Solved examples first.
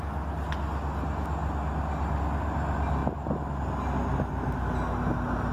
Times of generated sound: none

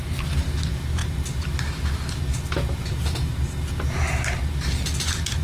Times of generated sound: none

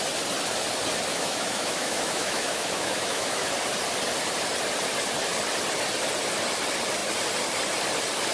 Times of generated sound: 1.1-3.5 (autoencoder, DAC-VAE)

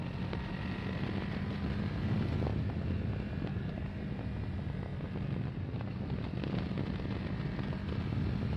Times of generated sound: 3.5-4.0 (codec, DAC)